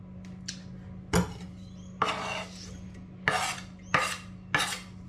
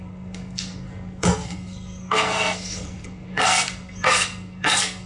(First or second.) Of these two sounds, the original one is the first